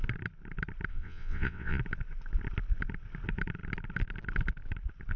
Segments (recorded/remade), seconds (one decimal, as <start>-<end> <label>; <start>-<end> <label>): 0.0-0.9 recorded; 0.9-1.8 remade; 1.8-5.2 recorded